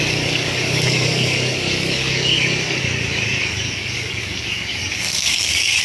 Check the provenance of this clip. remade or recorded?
remade